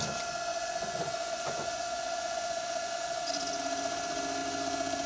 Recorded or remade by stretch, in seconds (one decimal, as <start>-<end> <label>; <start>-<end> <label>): 0.0-0.5 recorded; 0.5-3.6 remade; 3.6-5.1 recorded